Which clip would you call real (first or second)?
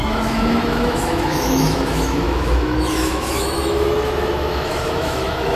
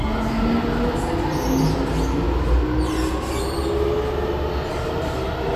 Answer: second